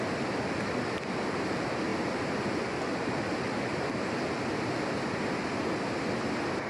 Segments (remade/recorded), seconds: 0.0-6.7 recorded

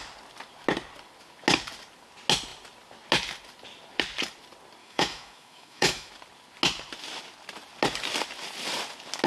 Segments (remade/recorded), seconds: 0.0-4.8 recorded; 4.8-6.1 remade; 6.1-9.3 recorded

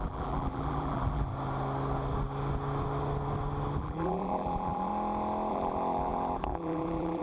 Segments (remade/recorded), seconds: 0.0-1.3 remade; 1.3-3.8 recorded; 3.8-4.9 remade; 4.9-5.5 recorded; 5.5-7.2 remade